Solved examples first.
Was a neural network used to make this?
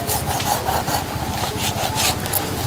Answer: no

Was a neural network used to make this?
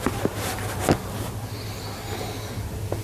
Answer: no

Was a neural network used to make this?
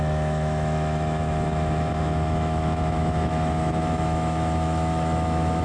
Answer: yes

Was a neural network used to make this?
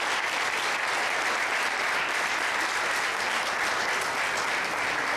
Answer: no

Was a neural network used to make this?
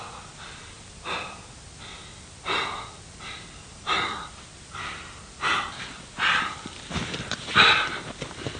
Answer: no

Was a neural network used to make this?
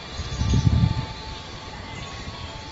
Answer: no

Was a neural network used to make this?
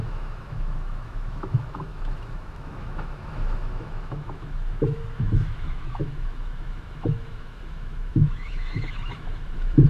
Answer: yes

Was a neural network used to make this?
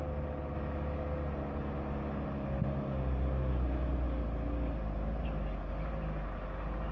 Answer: no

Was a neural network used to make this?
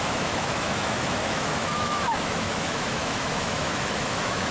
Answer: yes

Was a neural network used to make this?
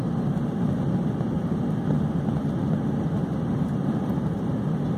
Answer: no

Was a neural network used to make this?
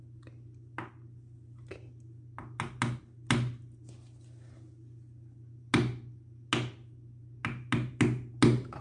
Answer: no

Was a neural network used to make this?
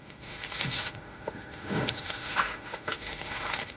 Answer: yes